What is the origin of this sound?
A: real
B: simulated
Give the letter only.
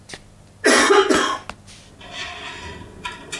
A